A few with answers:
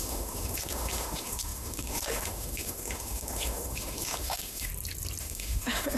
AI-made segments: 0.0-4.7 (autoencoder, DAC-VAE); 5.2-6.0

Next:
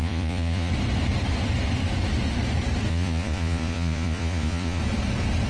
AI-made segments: 0.0-0.7 (vocoder, Vocos); 2.9-4.8

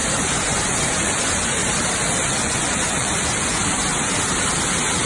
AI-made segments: 0.0-1.6 (vocoder, Vocos); 2.3-3.9

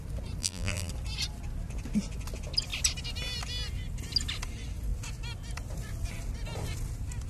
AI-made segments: 0.4-0.9 (vocoder, BigVGAN v2)

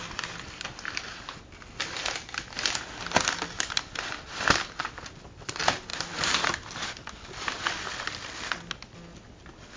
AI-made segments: none

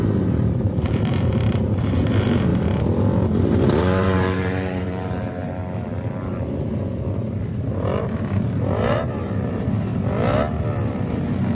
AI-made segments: 0.0-2.5 (vocoder, BigVGAN v2); 3.4-5.6; 7.7-9.9; 11.1-11.5